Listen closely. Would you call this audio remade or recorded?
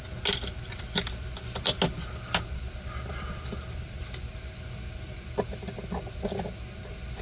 recorded